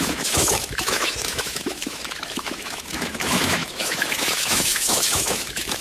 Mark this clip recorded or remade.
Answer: remade